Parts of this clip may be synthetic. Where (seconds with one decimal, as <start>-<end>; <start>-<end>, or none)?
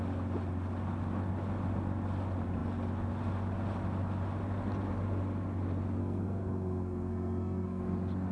6.0-7.8